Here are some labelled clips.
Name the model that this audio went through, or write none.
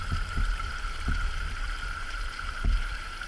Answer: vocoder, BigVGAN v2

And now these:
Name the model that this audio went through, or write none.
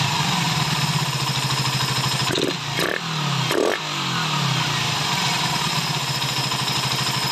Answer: none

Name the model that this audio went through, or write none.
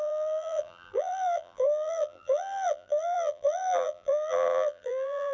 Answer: vocoder, BigVGAN v2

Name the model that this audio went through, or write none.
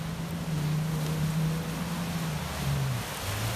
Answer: none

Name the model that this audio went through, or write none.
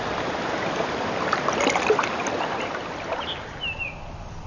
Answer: vocoder, BigVGAN v2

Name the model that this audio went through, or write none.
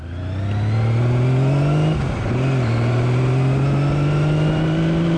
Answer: none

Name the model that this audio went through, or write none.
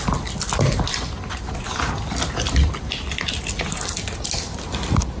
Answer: none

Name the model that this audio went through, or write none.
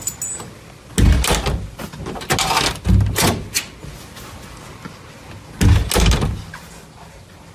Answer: none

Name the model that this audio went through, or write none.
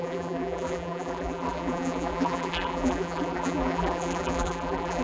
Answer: vocoder, BigVGAN v2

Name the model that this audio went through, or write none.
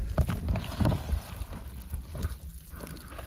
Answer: none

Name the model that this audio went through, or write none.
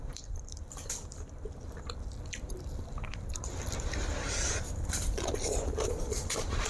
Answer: vocoder, BigVGAN v2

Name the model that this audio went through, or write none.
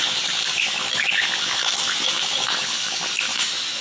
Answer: vocoder, BigVGAN v2